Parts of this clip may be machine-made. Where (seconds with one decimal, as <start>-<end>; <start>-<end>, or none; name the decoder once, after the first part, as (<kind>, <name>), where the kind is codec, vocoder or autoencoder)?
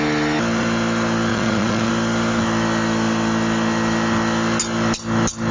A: 1.3-1.9 (vocoder, Vocos)